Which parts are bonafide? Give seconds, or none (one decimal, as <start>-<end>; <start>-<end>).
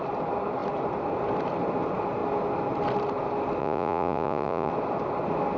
0.0-3.6; 4.7-5.6